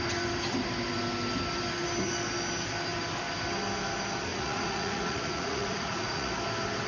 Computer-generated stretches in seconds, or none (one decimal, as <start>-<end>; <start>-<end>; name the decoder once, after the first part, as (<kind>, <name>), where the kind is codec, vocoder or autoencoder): 4.3-6.3 (vocoder, Vocos)